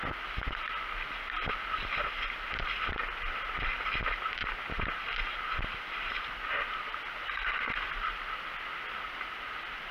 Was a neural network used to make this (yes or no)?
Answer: no